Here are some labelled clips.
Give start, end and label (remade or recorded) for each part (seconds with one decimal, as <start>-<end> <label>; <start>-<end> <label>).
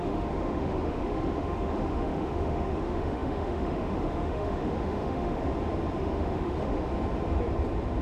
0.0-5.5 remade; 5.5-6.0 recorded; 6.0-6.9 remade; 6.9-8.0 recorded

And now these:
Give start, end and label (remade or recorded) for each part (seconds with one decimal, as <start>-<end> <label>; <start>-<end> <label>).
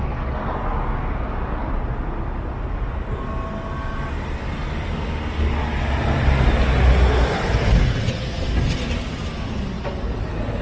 0.0-10.6 recorded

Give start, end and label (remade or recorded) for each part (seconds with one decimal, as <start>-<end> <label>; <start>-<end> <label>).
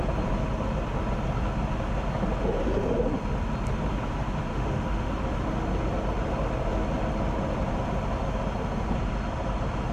0.0-4.5 recorded; 4.5-5.1 remade; 5.1-9.9 recorded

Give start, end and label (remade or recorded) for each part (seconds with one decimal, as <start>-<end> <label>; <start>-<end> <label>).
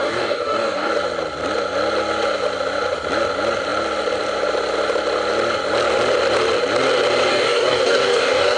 0.0-0.9 remade; 0.9-7.3 recorded; 7.3-8.6 remade